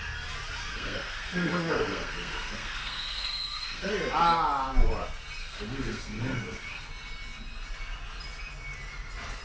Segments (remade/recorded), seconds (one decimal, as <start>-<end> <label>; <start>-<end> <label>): 0.0-0.7 recorded; 0.7-3.9 remade; 3.9-5.4 recorded; 5.4-6.9 remade; 6.9-9.4 recorded